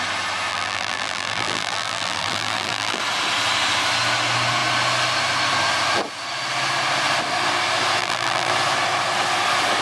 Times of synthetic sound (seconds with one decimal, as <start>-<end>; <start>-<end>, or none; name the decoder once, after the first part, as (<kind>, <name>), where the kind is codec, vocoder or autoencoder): 0.5-3.0 (vocoder, BigVGAN v2); 8.0-8.5